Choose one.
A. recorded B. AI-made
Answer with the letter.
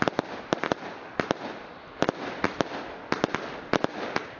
A